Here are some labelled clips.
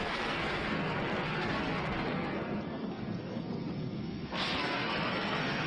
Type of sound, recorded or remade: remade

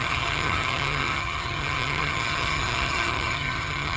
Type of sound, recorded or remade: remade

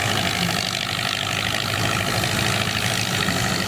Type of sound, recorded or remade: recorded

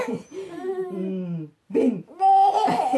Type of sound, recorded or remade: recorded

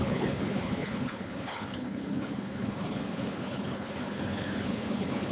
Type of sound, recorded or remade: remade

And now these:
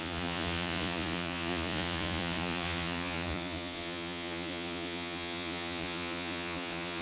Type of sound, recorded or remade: remade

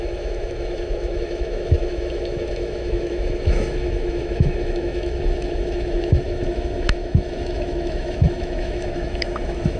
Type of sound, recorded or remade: remade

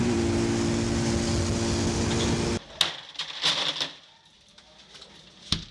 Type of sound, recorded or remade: recorded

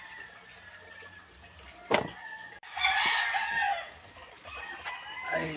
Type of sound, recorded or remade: recorded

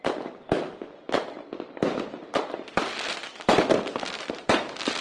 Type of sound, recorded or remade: recorded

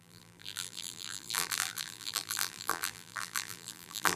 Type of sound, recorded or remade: remade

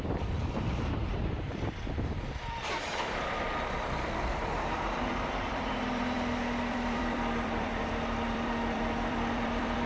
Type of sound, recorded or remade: remade